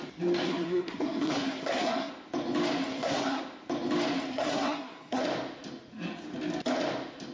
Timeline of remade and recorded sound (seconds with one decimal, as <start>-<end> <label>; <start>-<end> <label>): 0.0-0.5 recorded; 0.5-2.1 remade; 2.1-2.9 recorded; 2.9-3.4 remade; 3.4-4.3 recorded; 4.3-5.2 remade; 5.2-7.3 recorded